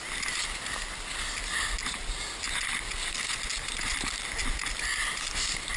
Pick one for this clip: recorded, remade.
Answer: recorded